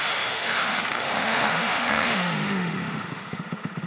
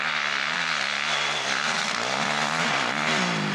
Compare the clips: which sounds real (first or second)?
second